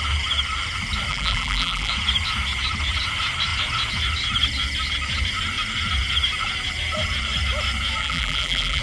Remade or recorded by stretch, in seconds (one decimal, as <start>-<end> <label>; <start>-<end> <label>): 0.0-1.1 recorded; 1.1-1.9 remade; 1.9-8.0 recorded; 8.0-8.8 remade